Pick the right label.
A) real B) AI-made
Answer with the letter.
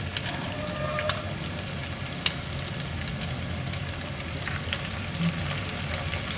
A